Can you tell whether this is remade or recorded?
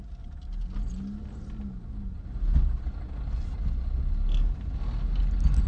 recorded